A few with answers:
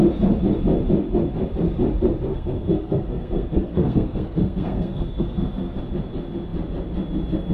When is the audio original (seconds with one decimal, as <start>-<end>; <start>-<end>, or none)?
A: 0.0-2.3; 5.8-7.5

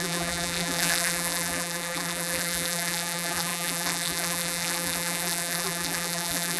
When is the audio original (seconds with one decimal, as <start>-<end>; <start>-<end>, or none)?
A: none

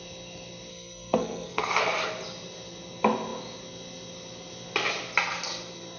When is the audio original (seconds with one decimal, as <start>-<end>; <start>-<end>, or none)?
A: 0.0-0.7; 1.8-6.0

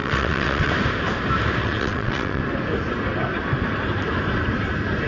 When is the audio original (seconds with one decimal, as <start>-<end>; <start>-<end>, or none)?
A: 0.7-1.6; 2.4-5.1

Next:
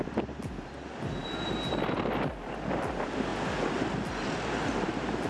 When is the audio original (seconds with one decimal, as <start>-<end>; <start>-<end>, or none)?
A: 0.0-5.3